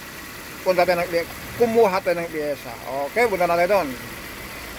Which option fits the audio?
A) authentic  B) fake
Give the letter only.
A